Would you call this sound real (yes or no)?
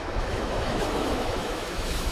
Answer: no